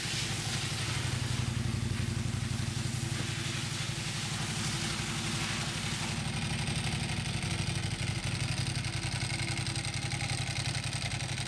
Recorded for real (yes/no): yes